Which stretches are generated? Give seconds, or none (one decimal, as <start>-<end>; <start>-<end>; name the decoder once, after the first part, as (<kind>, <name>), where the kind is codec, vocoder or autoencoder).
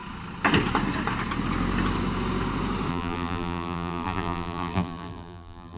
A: 2.9-5.8 (vocoder, BigVGAN v2)